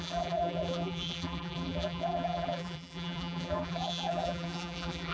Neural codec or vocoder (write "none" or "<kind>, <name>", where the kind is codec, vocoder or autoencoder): vocoder, BigVGAN v2